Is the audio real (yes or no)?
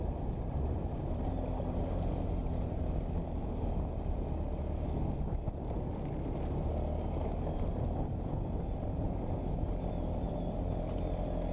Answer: yes